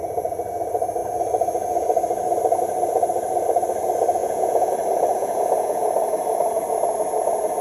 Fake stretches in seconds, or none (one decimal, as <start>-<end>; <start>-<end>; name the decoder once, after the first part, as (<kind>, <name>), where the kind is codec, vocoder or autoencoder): 4.2-4.7 (vocoder, Vocos); 5.2-5.8